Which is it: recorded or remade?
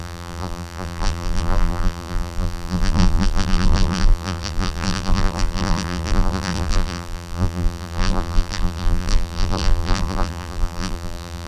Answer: remade